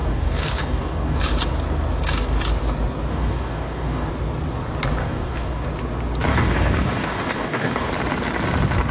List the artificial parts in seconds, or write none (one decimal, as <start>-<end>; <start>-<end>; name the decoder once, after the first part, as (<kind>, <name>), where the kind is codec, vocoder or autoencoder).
0.0-1.2 (codec, DAC); 3.1-4.1; 5.0-5.7; 6.3-7.9